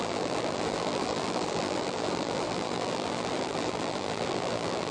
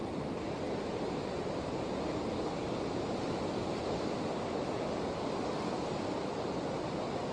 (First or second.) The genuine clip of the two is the second